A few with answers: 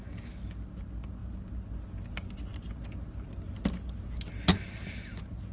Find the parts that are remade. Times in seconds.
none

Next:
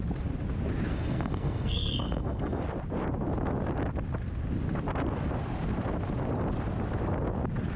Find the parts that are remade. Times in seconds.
0.9-2.6 (codec, SNAC)

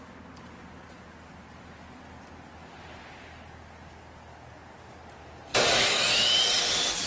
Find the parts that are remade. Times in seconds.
none